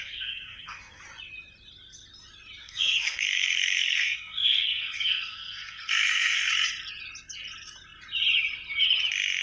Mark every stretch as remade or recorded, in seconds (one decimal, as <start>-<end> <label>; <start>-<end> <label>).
0.0-1.0 remade; 1.0-2.6 recorded; 2.6-6.5 remade; 6.5-9.4 recorded